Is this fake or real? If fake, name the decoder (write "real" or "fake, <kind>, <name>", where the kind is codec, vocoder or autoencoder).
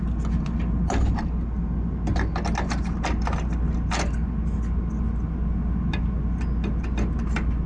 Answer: real